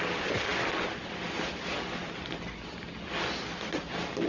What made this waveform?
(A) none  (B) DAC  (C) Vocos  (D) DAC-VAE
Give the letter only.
A